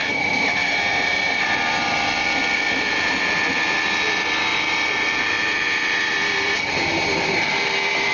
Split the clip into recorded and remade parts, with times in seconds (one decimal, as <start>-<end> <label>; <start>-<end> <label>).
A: 0.0-3.2 remade; 3.2-4.5 recorded; 4.5-8.1 remade